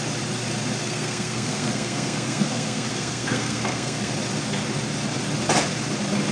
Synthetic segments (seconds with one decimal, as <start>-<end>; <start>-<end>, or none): 0.8-4.1